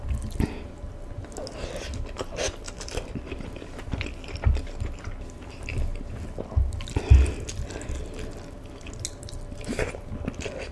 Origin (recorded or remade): recorded